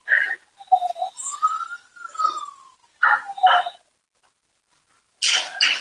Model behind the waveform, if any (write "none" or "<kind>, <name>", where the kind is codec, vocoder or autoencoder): none